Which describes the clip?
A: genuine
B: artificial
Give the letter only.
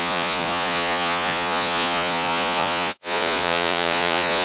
B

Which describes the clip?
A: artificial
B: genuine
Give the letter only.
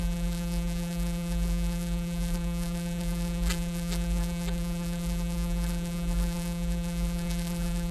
A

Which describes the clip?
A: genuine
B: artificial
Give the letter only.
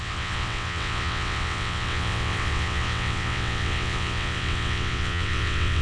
B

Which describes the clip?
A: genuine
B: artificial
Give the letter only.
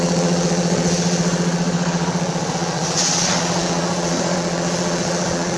B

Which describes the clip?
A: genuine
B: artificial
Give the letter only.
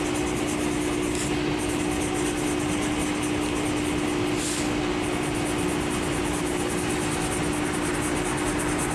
A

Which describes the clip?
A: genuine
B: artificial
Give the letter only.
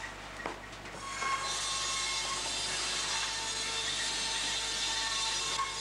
A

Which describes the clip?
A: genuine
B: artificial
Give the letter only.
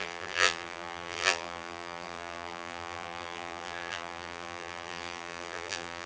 B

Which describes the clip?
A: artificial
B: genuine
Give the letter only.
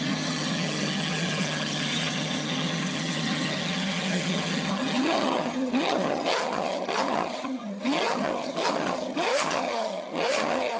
A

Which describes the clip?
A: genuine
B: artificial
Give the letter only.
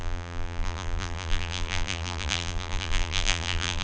B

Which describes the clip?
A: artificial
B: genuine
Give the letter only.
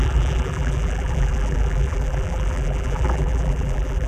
A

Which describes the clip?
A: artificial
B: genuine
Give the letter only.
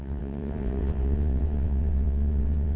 A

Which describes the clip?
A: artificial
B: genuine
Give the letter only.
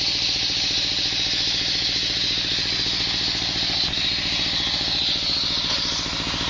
B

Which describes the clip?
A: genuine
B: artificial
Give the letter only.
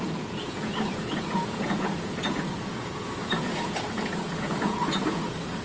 B